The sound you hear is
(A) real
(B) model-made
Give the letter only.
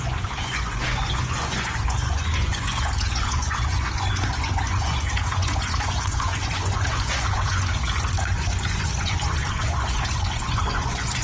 B